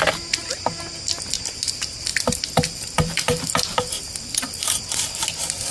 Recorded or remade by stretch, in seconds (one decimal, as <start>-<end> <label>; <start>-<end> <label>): 0.0-2.1 recorded; 2.1-4.8 remade; 4.8-5.7 recorded